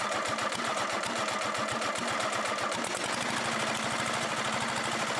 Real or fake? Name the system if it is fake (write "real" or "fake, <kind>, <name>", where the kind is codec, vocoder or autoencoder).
real